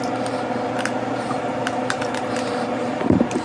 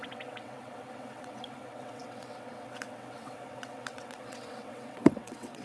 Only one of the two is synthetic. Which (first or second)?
second